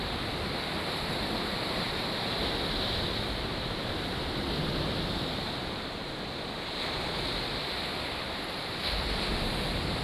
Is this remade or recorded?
recorded